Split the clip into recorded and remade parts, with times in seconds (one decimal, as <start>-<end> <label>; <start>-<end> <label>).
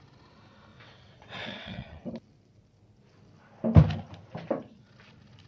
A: 0.0-0.7 recorded; 0.7-2.1 remade; 2.1-5.5 recorded